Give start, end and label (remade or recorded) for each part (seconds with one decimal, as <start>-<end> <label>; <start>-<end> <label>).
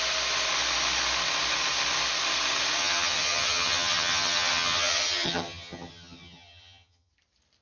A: 0.0-2.8 recorded; 2.8-7.1 remade; 7.1-7.6 recorded